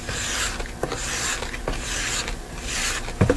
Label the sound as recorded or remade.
recorded